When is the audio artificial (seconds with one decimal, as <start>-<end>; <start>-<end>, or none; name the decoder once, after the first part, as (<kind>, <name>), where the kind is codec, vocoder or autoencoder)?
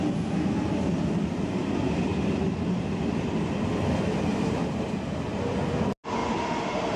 none